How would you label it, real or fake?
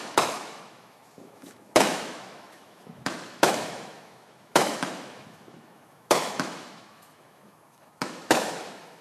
fake